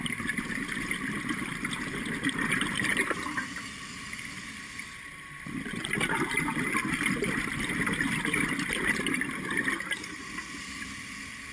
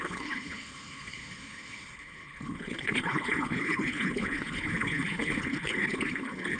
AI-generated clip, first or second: second